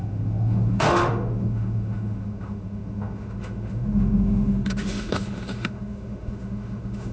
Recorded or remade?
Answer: remade